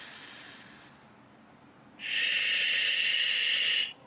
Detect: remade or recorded recorded